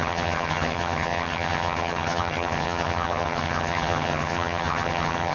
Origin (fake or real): fake